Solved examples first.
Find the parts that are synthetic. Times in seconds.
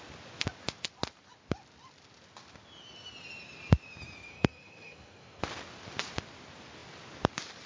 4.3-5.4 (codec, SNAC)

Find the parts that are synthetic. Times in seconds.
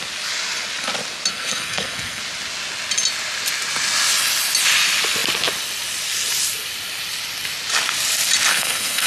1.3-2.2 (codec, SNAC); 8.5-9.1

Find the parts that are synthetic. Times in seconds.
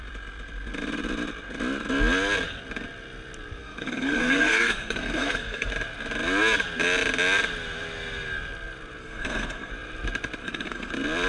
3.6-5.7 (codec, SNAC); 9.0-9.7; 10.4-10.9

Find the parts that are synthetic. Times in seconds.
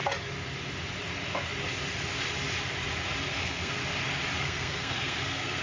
3.3-3.8 (codec, SNAC); 4.4-5.6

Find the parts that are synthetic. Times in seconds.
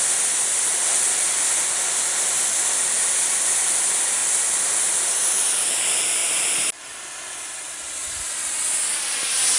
none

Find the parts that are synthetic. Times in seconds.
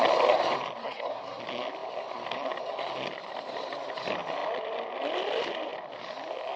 0.8-1.4 (codec, SNAC)